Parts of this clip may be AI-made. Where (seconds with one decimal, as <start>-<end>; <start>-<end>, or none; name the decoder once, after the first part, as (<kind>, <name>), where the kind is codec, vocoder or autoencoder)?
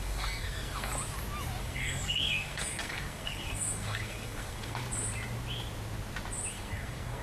0.0-0.9 (codec, SNAC); 1.6-4.8; 6.5-7.2